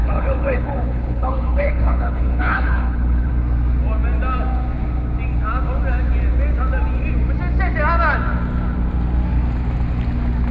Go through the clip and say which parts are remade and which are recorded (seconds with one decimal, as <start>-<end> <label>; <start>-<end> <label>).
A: 0.0-3.3 remade; 3.3-10.5 recorded